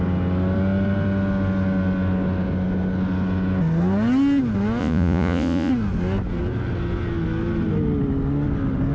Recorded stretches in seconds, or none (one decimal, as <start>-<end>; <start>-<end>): 0.0-4.8; 5.7-8.9